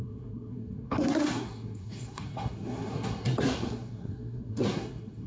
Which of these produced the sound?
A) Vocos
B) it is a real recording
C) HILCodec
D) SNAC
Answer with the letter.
D